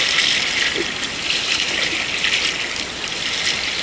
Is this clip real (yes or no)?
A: yes